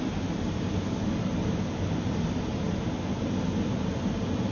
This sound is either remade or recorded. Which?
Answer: recorded